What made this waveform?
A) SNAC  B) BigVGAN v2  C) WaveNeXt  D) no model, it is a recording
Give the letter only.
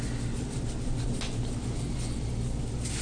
D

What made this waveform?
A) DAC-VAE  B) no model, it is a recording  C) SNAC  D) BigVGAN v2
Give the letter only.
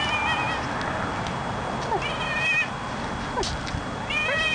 B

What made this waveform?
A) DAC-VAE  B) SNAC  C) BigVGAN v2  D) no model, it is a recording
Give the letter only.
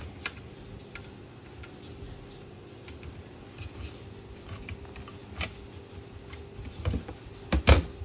D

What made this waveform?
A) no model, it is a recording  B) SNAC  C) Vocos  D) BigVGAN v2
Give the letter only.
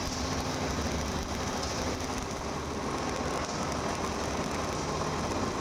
A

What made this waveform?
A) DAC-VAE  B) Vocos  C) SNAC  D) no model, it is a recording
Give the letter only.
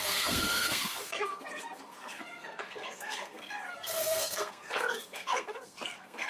C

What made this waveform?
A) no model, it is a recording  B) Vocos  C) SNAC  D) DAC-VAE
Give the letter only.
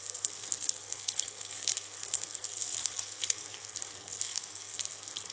C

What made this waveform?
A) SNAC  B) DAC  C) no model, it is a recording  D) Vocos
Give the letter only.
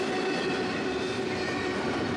C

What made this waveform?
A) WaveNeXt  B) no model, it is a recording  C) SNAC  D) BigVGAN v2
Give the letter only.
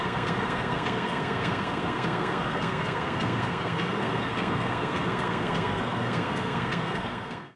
C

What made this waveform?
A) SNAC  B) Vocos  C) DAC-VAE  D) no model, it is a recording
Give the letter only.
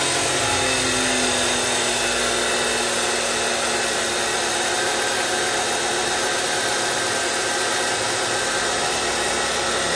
D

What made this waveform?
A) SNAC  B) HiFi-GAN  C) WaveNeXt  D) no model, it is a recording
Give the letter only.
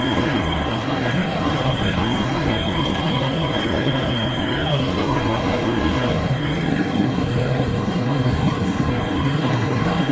A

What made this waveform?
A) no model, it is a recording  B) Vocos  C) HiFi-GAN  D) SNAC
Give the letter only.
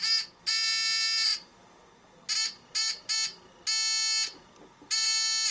A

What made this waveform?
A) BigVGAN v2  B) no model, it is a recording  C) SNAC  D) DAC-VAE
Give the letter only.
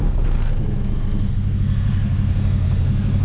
C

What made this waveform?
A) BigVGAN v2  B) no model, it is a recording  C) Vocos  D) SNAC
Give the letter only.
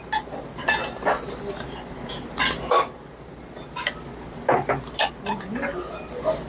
B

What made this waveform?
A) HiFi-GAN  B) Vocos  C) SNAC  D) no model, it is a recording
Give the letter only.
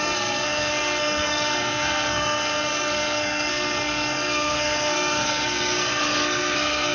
C